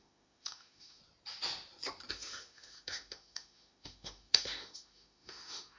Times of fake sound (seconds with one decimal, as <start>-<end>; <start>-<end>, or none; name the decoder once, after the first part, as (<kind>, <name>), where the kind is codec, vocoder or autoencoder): 0.0-1.0 (autoencoder, DAC-VAE); 2.1-5.8